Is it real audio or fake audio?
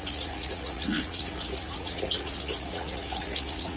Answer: fake